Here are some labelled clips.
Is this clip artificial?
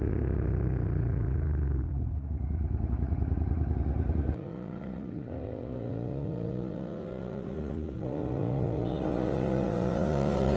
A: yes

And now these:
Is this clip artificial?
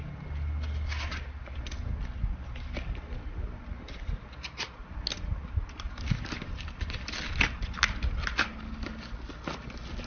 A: no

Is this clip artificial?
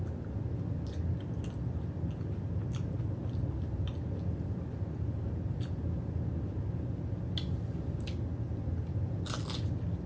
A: no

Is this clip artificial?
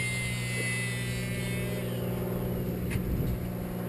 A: no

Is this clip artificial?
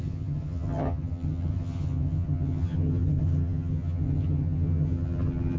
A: yes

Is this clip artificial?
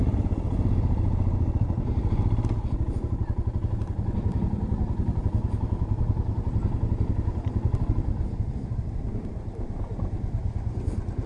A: no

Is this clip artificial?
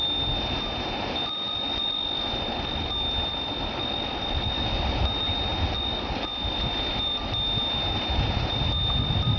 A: no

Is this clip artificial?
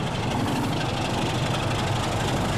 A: no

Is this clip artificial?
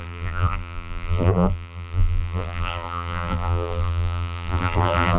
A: yes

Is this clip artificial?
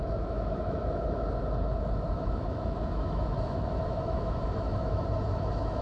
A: yes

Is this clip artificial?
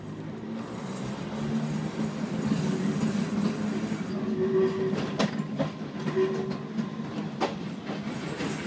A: no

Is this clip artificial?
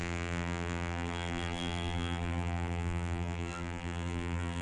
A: yes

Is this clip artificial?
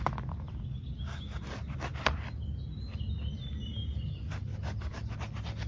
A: no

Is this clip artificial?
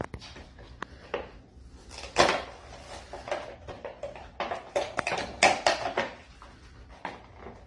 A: no